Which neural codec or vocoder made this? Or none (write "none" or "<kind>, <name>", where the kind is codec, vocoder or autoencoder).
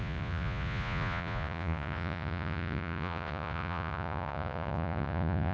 vocoder, Vocos